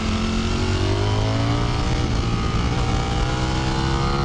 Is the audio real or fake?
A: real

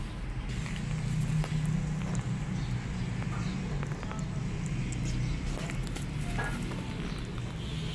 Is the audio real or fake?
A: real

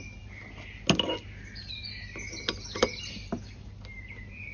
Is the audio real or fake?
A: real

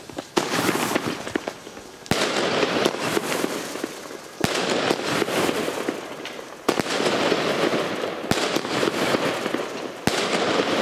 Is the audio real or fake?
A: real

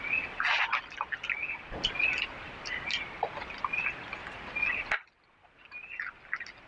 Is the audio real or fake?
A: real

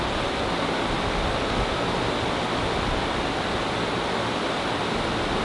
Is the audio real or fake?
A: real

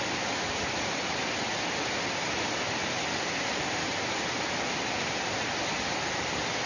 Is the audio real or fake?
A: real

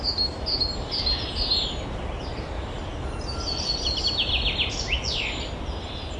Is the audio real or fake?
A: real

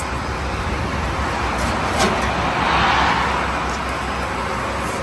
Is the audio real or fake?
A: real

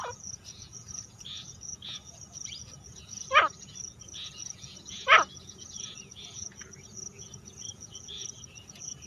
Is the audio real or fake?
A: fake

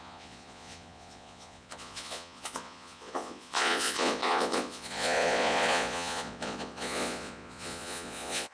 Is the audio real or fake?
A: fake